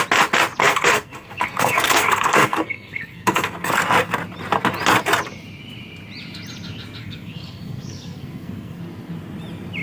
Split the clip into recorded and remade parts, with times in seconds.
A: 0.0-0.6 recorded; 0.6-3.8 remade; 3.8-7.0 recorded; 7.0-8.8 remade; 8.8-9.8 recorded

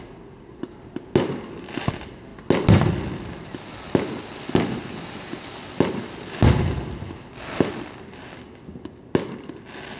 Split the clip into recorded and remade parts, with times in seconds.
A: 0.0-10.0 recorded

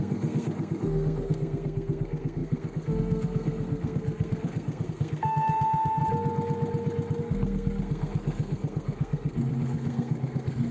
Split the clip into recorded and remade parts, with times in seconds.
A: 0.0-6.0 remade; 6.0-7.2 recorded; 7.2-10.7 remade